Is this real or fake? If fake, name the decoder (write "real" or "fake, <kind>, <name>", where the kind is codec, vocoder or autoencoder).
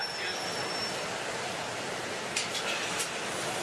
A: real